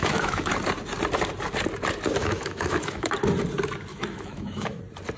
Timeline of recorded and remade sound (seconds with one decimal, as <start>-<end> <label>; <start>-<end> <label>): 0.0-0.5 remade; 0.5-2.2 recorded; 2.2-3.1 remade; 3.1-3.9 recorded; 3.9-4.8 remade; 4.8-5.2 recorded